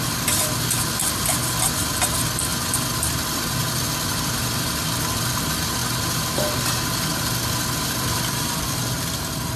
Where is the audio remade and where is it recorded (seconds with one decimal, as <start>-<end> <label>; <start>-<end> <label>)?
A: 0.0-5.8 remade; 5.8-7.9 recorded; 7.9-9.6 remade